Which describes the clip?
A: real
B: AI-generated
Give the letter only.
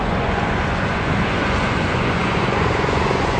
B